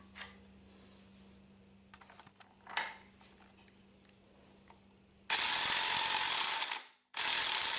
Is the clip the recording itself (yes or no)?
yes